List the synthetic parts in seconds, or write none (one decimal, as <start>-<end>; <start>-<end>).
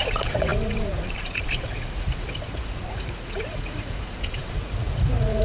0.0-5.4